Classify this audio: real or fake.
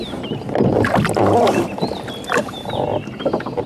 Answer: real